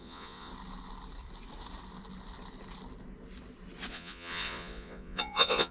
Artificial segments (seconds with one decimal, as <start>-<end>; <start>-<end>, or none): 0.0-0.5; 3.9-5.7